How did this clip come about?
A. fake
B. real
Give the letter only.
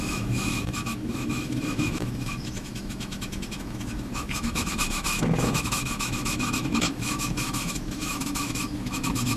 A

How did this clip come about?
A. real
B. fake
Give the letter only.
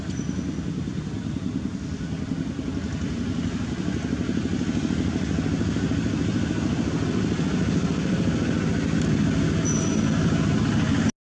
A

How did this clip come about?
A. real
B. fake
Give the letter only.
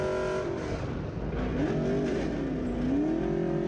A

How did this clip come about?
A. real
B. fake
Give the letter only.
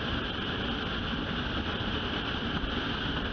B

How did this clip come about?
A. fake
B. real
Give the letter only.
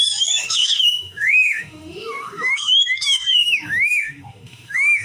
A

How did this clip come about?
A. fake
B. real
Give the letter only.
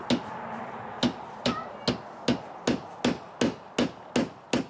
B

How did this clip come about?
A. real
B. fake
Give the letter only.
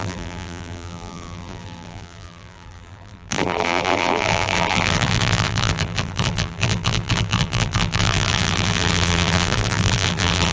B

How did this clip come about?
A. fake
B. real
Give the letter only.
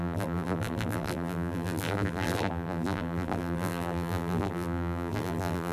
A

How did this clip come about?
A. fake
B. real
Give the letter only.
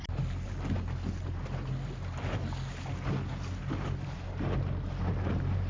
B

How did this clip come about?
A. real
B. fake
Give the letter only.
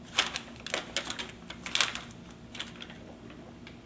A